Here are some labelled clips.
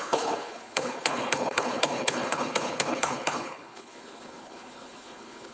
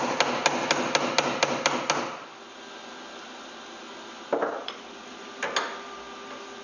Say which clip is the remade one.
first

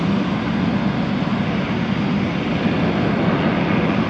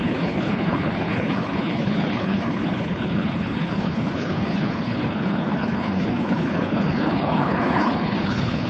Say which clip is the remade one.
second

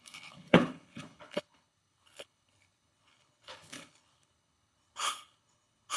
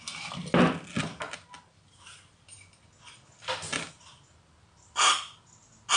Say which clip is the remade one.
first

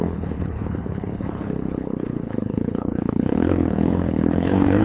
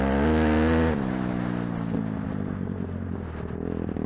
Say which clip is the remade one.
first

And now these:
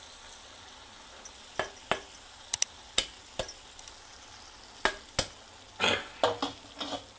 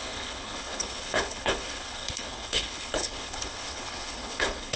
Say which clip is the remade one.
second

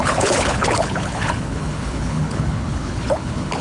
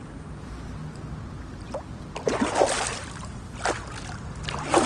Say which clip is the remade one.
first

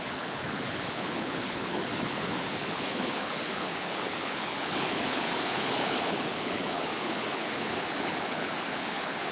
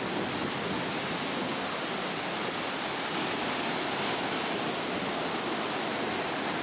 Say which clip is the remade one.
first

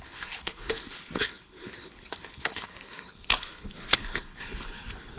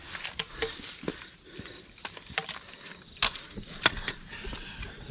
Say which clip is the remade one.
first